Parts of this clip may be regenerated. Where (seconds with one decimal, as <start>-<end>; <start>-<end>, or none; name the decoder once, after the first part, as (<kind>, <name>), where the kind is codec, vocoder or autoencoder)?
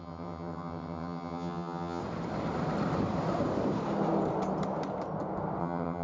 0.0-2.0 (vocoder, HiFi-GAN); 5.6-6.0